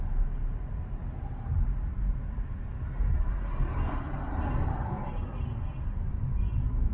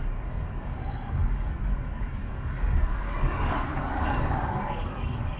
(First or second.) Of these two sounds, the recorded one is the first